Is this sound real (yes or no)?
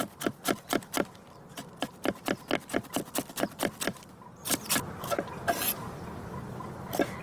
yes